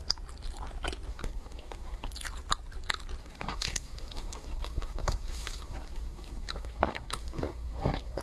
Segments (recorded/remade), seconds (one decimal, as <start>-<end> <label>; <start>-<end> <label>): 0.0-1.1 recorded; 1.1-2.1 remade; 2.1-3.2 recorded; 3.2-8.2 remade